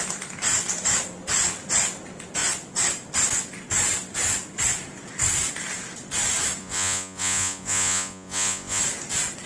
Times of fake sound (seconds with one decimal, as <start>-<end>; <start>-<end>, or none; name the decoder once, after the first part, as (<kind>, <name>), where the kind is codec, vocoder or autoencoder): 6.6-8.8 (vocoder, Vocos)